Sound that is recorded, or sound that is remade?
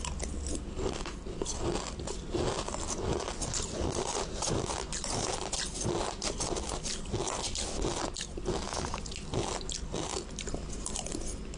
recorded